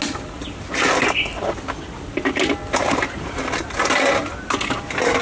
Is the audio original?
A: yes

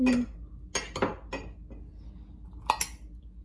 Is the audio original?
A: yes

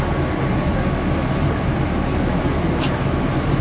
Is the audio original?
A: yes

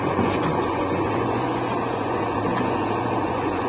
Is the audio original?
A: no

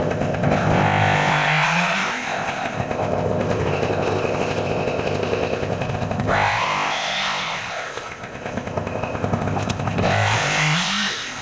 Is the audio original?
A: no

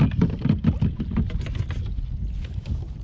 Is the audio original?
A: yes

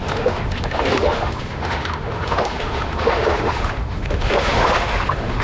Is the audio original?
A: no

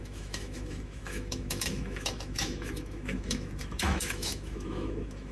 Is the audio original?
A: no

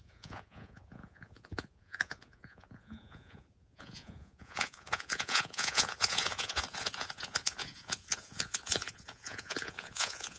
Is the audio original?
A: no